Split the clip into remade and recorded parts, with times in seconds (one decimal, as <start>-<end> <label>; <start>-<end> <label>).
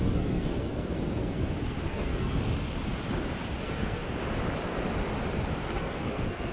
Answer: 0.0-2.4 remade; 2.4-3.6 recorded; 3.6-4.0 remade; 4.0-5.7 recorded; 5.7-6.5 remade